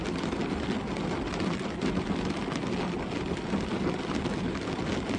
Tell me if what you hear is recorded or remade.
recorded